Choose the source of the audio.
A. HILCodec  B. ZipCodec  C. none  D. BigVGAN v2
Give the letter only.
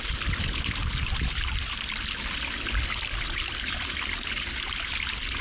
D